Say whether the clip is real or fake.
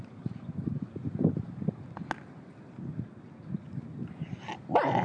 real